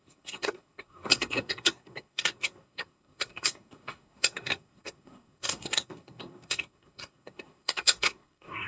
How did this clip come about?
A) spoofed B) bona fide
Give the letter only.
A